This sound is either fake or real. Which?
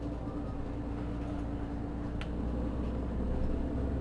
real